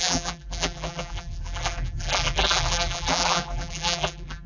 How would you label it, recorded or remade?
remade